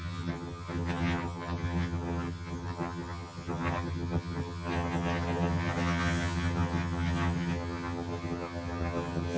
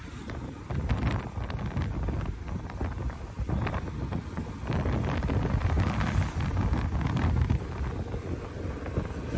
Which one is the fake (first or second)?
first